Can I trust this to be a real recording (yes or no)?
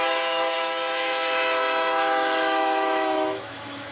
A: no